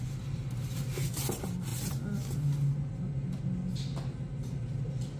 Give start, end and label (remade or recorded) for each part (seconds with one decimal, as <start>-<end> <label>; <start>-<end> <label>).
0.0-5.2 recorded